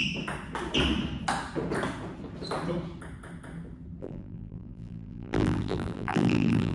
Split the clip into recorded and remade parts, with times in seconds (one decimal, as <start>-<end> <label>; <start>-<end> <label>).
0.0-4.0 recorded; 4.0-6.7 remade